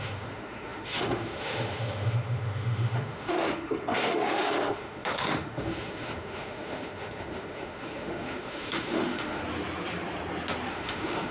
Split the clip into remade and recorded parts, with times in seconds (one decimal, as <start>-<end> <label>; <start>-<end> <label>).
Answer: 0.0-9.4 remade; 9.4-10.7 recorded; 10.7-11.3 remade